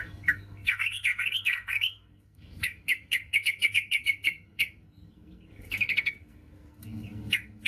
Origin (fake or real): fake